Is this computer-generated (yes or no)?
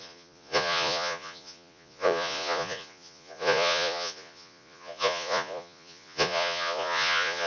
yes